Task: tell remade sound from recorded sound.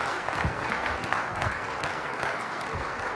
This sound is remade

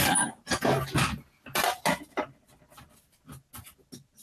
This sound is recorded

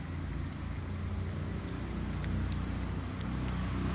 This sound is recorded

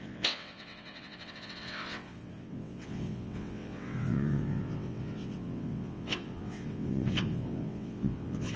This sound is remade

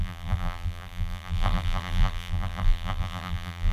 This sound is remade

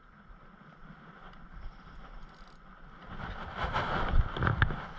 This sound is recorded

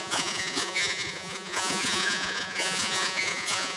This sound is remade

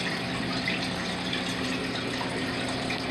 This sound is recorded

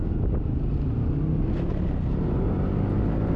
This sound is recorded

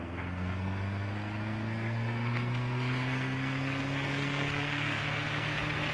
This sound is remade